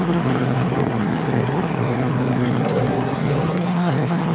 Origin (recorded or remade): remade